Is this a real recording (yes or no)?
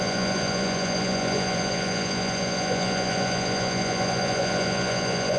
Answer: no